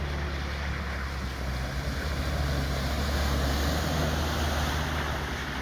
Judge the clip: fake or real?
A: real